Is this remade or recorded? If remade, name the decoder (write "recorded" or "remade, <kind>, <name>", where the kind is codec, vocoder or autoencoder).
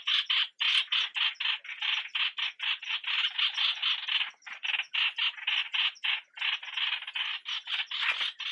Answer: recorded